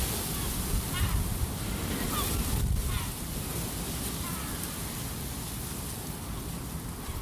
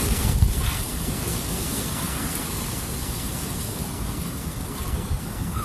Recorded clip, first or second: first